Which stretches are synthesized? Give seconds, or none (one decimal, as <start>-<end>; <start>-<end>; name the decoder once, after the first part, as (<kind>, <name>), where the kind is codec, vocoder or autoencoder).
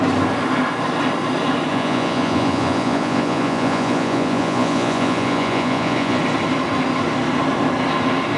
1.7-6.2 (vocoder, Vocos)